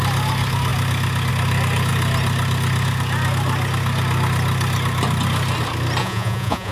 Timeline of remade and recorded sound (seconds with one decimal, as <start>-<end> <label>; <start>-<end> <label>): 0.0-6.0 recorded; 6.0-6.7 remade